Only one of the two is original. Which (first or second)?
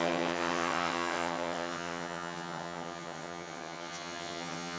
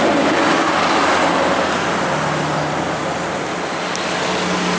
second